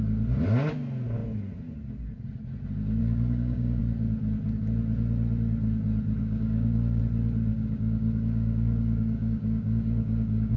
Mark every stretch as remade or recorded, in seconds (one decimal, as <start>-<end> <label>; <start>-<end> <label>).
0.0-3.0 recorded; 3.0-3.8 remade; 3.8-6.2 recorded; 6.2-7.0 remade; 7.0-7.5 recorded; 7.5-10.6 remade